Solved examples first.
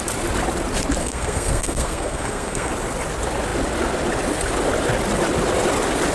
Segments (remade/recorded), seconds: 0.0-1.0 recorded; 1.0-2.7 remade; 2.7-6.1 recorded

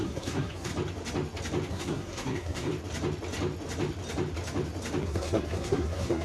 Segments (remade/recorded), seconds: 0.0-0.7 remade; 0.7-1.7 recorded; 1.7-2.7 remade; 2.7-5.0 recorded; 5.0-6.2 remade

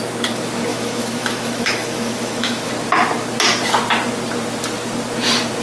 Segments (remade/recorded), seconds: 0.0-0.7 recorded; 0.7-2.7 remade; 2.7-5.6 recorded

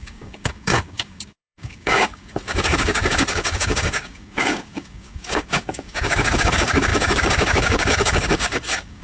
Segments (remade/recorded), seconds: 0.0-9.0 remade

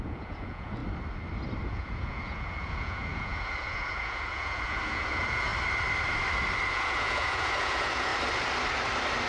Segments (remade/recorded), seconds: 0.0-0.8 remade; 0.8-1.7 recorded; 1.7-5.5 remade; 5.5-6.7 recorded; 6.7-8.1 remade; 8.1-9.3 recorded

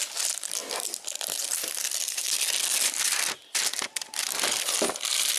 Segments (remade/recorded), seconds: 0.0-5.4 recorded

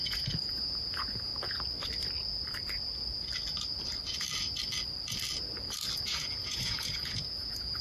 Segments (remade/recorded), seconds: 0.0-1.3 remade; 1.3-6.0 recorded; 6.0-7.8 remade